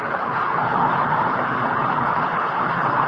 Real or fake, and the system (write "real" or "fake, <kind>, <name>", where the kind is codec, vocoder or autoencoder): fake, codec, HILCodec